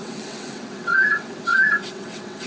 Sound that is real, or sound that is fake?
fake